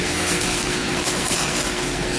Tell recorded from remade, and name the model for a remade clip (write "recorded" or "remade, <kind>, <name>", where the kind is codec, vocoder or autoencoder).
remade, codec, SNAC